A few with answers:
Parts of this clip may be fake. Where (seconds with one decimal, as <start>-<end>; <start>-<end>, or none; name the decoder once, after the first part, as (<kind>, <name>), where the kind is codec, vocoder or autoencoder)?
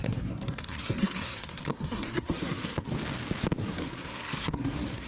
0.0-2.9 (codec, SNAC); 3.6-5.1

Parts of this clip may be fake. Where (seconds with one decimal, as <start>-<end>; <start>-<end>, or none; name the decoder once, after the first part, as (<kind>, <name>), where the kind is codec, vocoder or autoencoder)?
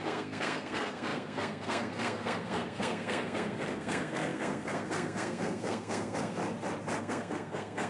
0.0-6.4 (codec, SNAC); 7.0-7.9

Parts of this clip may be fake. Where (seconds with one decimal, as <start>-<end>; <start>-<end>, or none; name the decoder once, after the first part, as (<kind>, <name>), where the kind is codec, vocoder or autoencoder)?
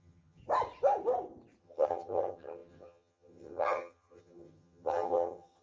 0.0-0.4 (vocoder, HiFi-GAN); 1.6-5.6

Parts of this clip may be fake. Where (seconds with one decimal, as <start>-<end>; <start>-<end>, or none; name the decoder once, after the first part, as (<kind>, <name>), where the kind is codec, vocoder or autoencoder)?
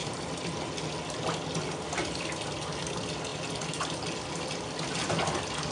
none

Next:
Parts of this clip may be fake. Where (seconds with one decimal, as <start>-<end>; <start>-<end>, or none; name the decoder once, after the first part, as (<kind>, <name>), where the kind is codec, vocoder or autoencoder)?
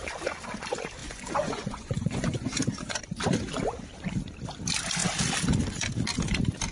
1.0-3.0 (vocoder, Vocos)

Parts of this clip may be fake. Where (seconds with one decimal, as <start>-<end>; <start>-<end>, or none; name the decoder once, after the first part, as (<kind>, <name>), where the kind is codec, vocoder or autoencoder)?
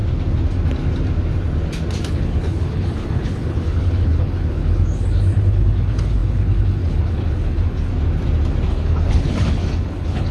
2.1-7.9 (codec, HILCodec); 8.7-10.3